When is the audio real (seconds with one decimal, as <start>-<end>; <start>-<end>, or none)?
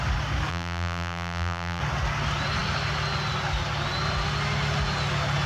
0.0-0.5; 1.8-5.5